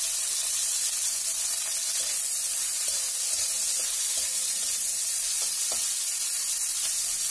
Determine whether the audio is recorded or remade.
recorded